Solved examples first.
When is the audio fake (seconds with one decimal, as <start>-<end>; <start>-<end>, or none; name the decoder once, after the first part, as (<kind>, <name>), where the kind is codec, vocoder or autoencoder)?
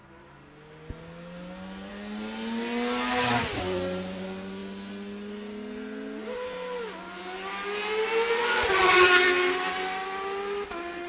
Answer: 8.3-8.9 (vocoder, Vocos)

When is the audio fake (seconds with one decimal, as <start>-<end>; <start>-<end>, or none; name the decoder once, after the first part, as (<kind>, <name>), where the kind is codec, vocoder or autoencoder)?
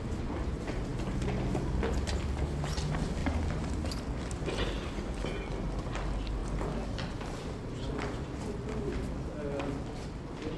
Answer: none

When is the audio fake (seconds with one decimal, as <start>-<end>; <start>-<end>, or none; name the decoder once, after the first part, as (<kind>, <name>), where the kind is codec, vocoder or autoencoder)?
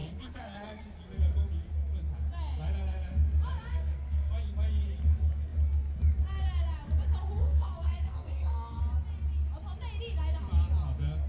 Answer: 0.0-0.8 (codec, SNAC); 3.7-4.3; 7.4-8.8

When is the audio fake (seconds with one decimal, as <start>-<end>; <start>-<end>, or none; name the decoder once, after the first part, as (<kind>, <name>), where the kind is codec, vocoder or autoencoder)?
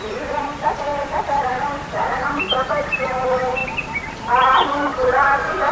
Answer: 0.0-3.6 (vocoder, BigVGAN v2); 4.1-5.7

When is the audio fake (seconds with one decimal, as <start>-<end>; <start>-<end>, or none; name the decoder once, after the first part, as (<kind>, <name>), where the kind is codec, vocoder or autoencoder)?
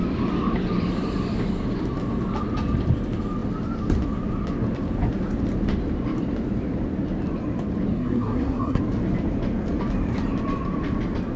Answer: 7.9-8.8 (codec, SNAC)